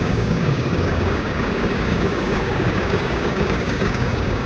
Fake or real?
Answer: fake